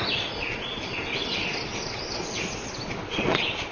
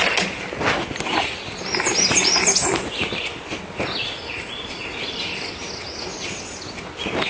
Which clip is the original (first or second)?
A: second